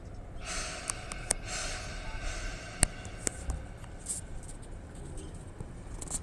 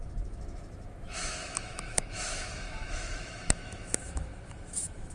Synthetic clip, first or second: second